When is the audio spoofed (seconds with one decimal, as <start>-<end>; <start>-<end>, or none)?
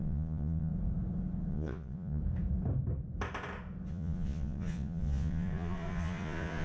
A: 0.0-0.7; 1.5-2.2; 3.9-6.6